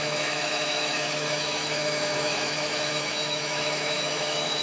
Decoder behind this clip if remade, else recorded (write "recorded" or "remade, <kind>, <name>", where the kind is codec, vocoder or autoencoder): remade, autoencoder, DAC-VAE